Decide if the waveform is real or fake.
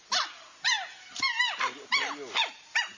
real